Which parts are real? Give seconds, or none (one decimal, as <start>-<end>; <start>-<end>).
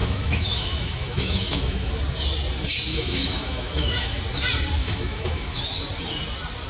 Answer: 1.9-2.9; 4.2-4.8; 5.6-6.7